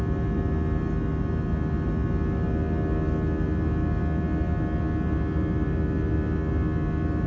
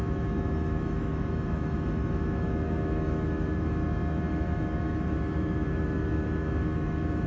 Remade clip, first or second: second